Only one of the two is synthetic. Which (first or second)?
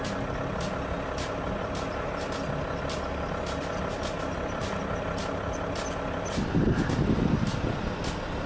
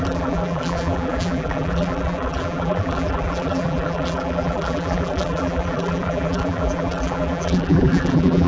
second